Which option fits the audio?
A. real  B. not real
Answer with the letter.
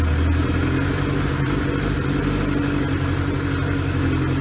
A